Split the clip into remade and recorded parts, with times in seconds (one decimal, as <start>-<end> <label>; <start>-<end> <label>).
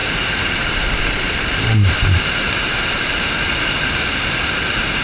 0.0-5.0 recorded